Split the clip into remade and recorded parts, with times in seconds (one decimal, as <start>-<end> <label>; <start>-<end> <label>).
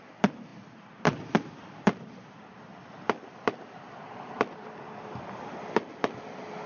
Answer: 0.0-0.5 recorded; 0.5-4.5 remade; 4.5-6.7 recorded